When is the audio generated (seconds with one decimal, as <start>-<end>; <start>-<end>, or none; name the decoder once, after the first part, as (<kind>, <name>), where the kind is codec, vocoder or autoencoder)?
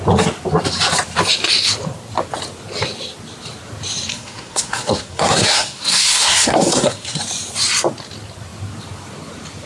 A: 4.1-7.2 (codec, SNAC)